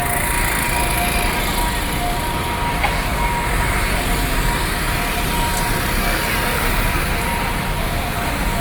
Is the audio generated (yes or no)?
no